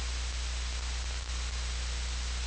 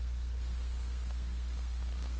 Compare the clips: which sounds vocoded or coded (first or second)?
second